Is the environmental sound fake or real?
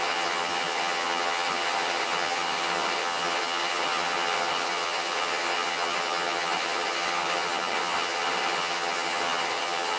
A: fake